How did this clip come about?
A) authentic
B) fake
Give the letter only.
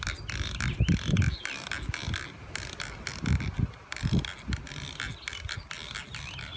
A